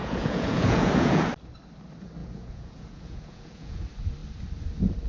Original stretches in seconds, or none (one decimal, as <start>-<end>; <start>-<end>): 1.3-2.2; 3.8-5.1